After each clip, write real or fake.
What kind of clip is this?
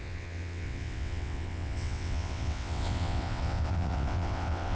fake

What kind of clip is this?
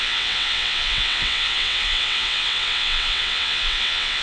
fake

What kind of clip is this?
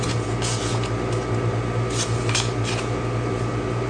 real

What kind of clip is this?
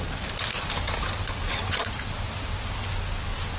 real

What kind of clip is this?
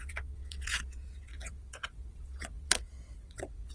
fake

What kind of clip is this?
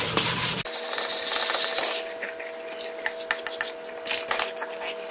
real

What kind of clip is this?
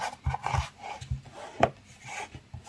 real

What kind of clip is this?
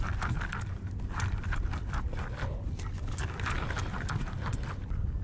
real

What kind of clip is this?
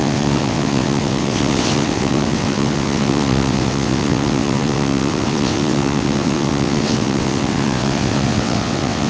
fake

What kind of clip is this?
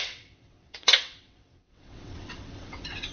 fake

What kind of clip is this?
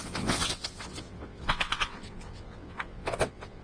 fake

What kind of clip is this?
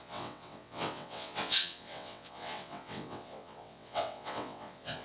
fake